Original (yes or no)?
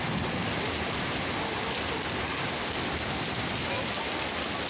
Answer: yes